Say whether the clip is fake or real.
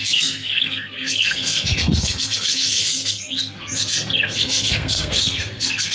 fake